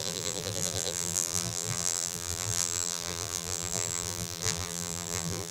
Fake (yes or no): yes